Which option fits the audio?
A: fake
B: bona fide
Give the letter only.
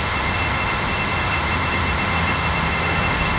A